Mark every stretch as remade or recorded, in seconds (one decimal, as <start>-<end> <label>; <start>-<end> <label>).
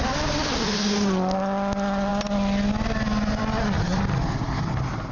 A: 0.0-5.1 recorded